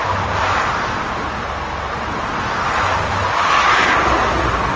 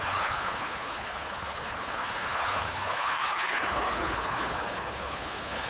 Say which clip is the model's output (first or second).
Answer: second